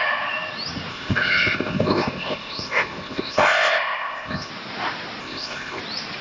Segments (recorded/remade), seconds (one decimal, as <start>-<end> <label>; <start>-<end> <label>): 0.0-0.9 recorded; 0.9-4.5 remade; 4.5-5.2 recorded; 5.2-5.8 remade; 5.8-6.2 recorded